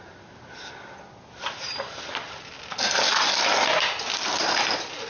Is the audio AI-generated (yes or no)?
no